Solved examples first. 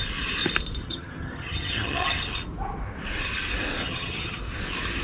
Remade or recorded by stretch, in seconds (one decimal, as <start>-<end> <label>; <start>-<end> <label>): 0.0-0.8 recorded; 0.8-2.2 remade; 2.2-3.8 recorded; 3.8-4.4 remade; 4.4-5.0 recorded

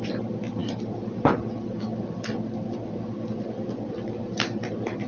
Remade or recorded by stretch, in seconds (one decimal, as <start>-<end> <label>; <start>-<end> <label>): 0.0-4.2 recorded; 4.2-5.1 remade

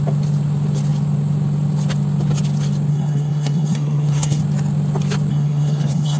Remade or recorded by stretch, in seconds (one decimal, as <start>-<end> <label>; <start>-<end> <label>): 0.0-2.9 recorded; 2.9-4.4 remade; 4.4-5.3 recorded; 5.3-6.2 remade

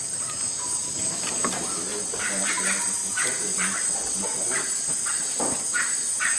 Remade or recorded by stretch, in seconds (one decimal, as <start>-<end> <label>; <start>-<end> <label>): 0.0-1.9 recorded; 1.9-2.5 remade; 2.5-3.0 recorded; 3.0-5.1 remade; 5.1-6.4 recorded